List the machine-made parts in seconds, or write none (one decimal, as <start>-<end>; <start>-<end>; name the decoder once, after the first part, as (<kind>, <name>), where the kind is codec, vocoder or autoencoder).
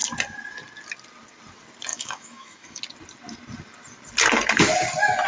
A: 1.9-2.8 (autoencoder, DAC-VAE)